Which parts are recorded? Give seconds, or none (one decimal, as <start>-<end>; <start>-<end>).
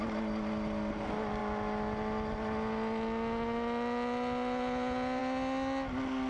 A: 0.0-6.3